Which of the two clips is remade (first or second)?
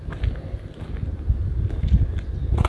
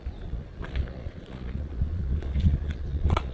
second